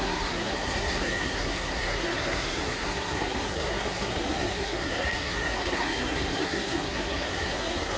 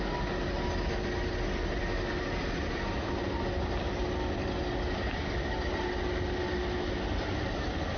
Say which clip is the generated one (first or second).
first